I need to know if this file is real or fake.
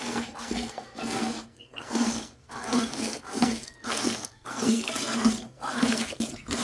fake